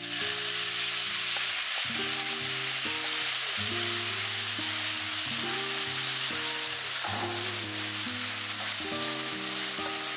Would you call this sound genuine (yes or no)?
yes